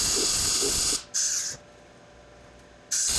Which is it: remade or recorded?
recorded